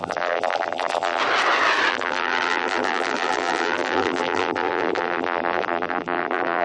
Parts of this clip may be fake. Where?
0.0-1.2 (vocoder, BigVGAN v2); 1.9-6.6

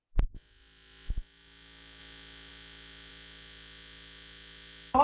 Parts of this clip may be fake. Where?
none

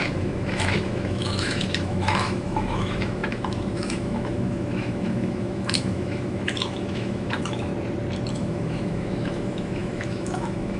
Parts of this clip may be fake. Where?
0.0-7.7 (autoencoder, DAC-VAE); 8.3-10.8

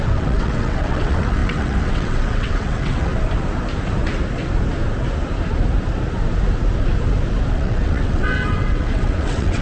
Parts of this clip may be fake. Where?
0.0-3.1 (vocoder, WaveNeXt); 7.5-9.6

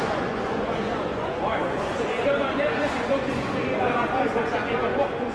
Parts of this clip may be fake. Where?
0.0-5.3 (vocoder, Vocos)

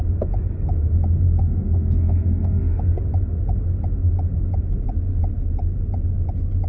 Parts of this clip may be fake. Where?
1.4-2.8 (autoencoder, DAC-VAE)